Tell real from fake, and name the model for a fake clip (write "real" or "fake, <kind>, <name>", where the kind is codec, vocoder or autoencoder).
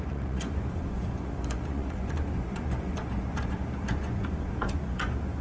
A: fake, vocoder, Vocos